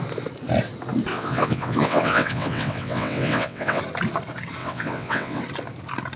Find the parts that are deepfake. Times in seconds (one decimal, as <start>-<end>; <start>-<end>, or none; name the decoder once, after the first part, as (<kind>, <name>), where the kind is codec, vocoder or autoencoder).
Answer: 1.1-3.8 (vocoder, WaveNeXt); 4.6-5.4